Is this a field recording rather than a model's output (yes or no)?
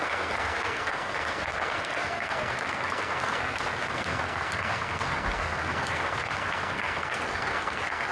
no